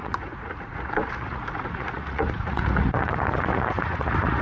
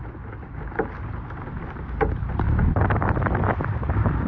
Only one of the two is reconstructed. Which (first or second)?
first